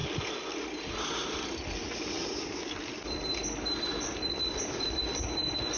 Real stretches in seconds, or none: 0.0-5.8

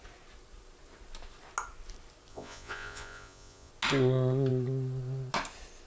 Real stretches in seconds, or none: 0.0-2.3; 3.7-5.9

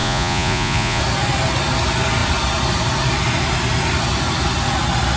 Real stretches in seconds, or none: 1.0-5.2

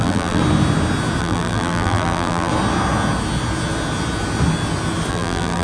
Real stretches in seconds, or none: 0.4-1.2; 2.5-5.1

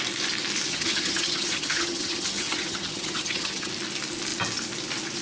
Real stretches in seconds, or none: 0.0-0.7; 3.7-5.2

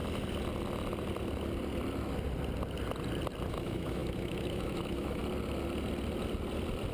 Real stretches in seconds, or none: 0.0-3.5; 5.2-6.9